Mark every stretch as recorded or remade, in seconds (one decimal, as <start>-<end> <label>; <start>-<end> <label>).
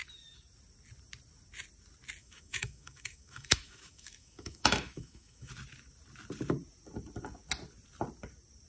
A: 0.0-2.2 recorded; 2.2-5.5 remade; 5.5-8.7 recorded